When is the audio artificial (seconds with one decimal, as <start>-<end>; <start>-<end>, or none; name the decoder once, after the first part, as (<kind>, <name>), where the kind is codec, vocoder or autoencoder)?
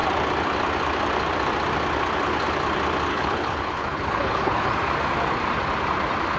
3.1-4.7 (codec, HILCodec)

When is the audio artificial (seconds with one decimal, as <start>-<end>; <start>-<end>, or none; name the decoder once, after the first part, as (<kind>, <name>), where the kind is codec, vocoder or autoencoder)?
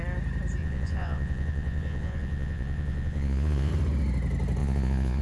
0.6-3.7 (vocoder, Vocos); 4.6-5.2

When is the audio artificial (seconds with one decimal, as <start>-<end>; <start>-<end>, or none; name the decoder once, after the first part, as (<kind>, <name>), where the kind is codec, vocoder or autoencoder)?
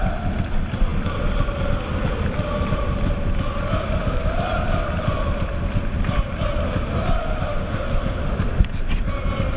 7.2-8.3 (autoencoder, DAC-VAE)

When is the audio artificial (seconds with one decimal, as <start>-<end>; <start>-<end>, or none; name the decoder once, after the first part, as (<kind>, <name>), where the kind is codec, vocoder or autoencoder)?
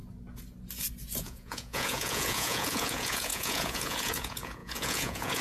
1.2-5.4 (vocoder, Vocos)